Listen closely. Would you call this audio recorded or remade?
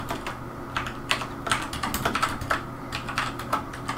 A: recorded